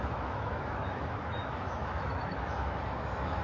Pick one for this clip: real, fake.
fake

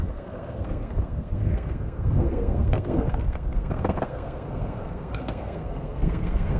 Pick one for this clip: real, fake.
fake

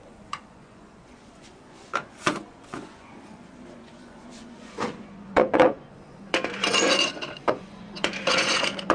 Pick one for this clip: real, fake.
fake